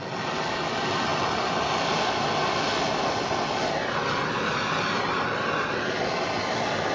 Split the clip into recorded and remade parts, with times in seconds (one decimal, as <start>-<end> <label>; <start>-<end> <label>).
0.0-6.9 recorded